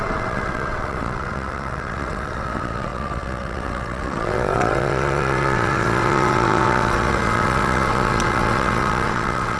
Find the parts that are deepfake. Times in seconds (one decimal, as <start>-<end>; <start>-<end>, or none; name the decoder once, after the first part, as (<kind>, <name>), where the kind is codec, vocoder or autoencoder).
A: 0.0-9.6 (vocoder, WaveNeXt)